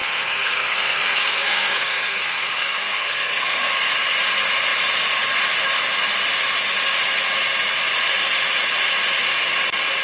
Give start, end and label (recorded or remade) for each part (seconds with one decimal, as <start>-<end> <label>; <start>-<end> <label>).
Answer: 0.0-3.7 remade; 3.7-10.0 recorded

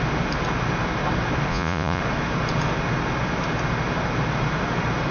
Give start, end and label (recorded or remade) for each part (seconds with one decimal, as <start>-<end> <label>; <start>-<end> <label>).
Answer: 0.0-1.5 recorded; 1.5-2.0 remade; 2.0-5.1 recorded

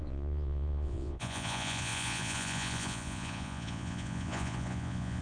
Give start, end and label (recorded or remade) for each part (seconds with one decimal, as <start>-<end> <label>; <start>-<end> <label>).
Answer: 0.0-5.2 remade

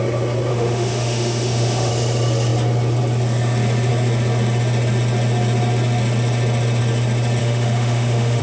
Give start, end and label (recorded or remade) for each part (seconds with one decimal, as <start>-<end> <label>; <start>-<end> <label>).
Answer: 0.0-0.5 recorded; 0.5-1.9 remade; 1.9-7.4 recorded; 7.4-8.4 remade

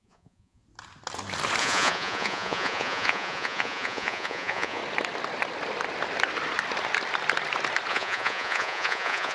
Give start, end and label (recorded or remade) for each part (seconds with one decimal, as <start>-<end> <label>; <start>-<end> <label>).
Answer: 0.0-0.6 remade; 0.6-1.6 recorded; 1.6-4.8 remade; 4.8-7.9 recorded; 7.9-9.3 remade